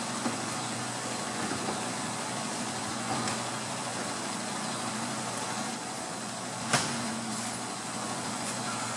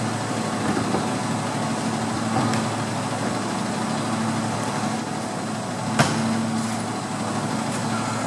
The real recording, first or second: second